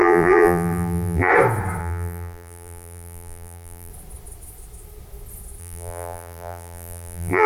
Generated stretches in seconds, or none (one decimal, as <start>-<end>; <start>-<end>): 0.0-1.3; 1.8-3.9; 5.6-7.5